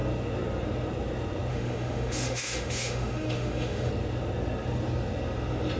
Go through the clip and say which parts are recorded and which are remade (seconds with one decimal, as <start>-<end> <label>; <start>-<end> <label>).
0.0-1.5 recorded; 1.5-3.9 remade; 3.9-5.8 recorded